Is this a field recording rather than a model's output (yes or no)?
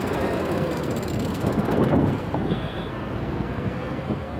no